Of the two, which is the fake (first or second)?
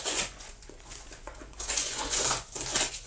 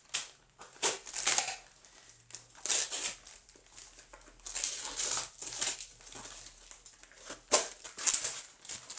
first